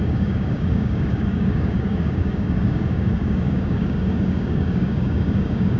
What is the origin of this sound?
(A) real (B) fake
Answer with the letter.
B